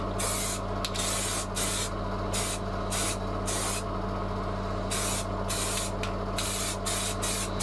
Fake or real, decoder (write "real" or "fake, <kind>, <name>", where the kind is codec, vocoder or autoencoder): real